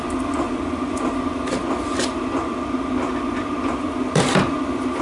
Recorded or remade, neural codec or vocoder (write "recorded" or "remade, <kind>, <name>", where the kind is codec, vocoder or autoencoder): remade, vocoder, BigVGAN v2